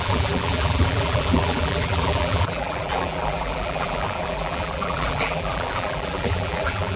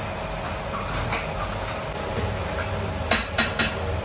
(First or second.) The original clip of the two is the second